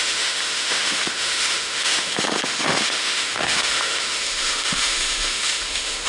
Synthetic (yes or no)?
yes